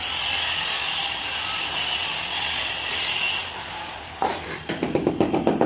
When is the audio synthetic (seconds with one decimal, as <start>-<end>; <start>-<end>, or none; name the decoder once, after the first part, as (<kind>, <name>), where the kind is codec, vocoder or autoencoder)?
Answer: none